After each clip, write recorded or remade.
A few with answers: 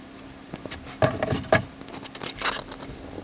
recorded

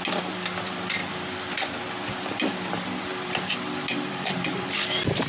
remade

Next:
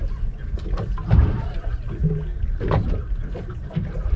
recorded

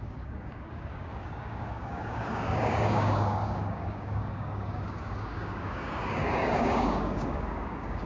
remade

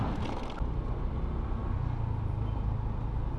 recorded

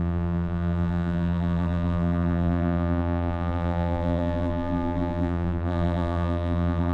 remade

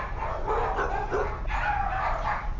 recorded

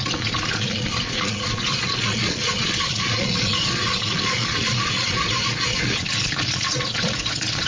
remade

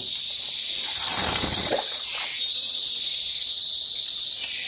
recorded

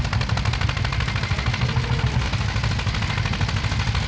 recorded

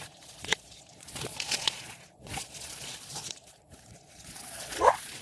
remade